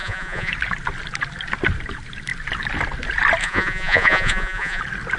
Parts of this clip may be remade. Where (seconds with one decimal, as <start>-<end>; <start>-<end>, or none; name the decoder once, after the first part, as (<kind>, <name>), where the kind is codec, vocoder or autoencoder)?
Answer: 0.0-0.5 (vocoder, Vocos); 3.4-4.8